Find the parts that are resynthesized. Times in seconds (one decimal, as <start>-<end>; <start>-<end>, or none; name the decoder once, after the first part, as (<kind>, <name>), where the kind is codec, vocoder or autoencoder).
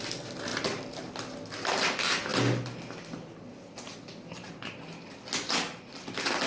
0.5-1.1 (vocoder, BigVGAN v2)